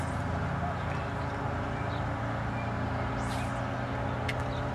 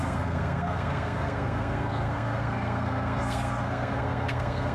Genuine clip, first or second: first